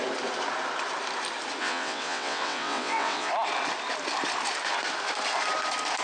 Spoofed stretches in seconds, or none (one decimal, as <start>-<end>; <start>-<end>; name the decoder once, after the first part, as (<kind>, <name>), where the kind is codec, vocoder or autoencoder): 1.6-3.3 (vocoder, WaveNeXt)